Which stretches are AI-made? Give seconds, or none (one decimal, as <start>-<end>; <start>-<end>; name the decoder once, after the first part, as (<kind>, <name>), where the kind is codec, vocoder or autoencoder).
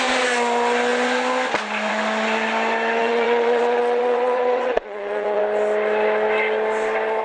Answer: 3.0-5.4 (vocoder, WaveNeXt)